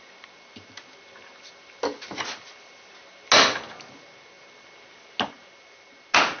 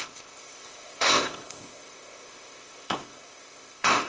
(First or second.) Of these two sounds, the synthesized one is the second